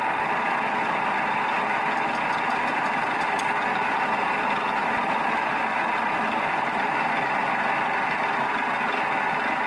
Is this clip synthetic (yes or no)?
yes